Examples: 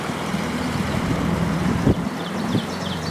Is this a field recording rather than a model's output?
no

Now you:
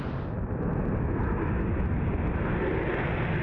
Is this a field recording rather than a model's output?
yes